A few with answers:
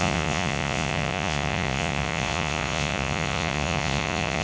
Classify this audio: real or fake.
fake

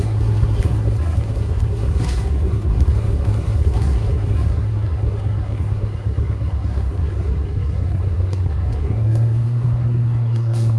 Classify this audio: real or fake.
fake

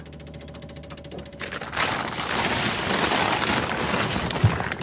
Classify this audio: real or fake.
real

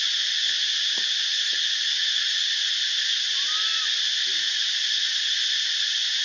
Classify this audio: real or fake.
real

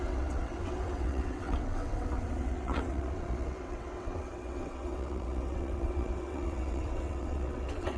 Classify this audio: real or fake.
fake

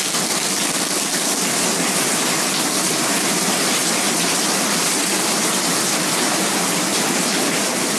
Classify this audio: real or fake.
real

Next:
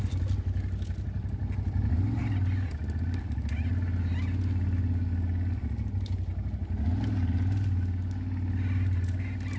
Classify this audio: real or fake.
real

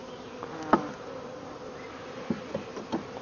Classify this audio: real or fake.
real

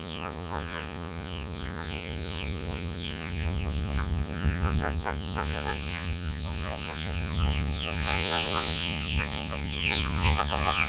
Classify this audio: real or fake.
fake